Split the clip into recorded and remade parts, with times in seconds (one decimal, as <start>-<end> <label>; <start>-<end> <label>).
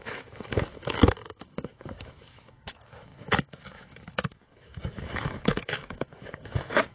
0.0-6.9 remade